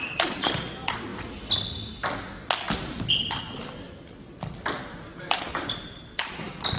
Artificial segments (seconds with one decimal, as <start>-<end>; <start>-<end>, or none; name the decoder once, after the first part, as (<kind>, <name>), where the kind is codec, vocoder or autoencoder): 0.0-1.1 (vocoder, BigVGAN v2); 4.8-6.8